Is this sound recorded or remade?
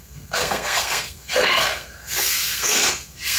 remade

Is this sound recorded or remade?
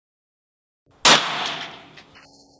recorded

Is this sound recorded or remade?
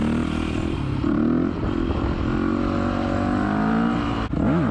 recorded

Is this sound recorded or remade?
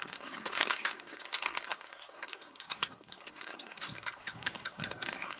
remade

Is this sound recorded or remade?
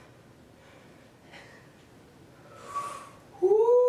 recorded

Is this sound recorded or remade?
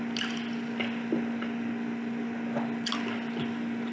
recorded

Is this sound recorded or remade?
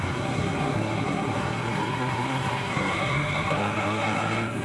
remade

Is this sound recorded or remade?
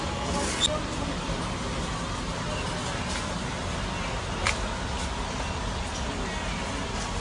recorded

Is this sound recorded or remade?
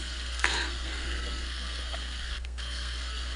remade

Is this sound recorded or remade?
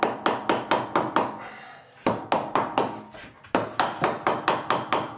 recorded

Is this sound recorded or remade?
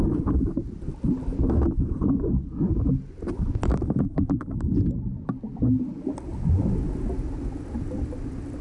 recorded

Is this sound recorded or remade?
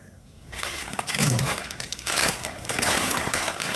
remade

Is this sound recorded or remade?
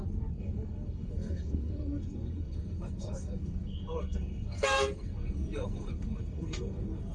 remade